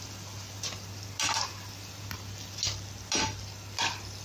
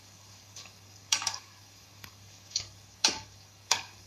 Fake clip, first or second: second